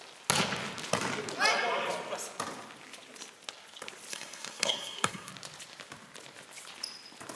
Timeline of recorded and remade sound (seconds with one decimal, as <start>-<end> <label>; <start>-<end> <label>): 0.0-4.1 recorded; 4.1-5.3 remade; 5.3-7.4 recorded